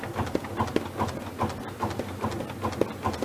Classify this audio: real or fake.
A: real